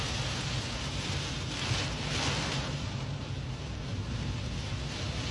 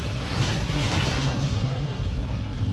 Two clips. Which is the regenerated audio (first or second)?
second